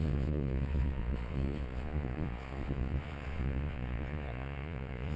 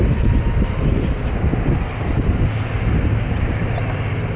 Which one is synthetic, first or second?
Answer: first